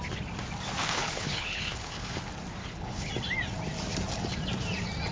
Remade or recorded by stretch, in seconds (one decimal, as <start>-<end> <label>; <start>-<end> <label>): 0.0-0.8 recorded; 0.8-2.2 remade; 2.2-2.6 recorded; 2.6-3.1 remade; 3.1-5.1 recorded